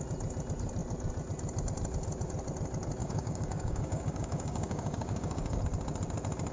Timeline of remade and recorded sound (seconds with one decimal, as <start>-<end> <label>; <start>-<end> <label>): 0.0-3.0 recorded; 3.0-5.6 remade; 5.6-6.5 recorded